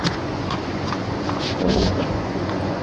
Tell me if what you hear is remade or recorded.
remade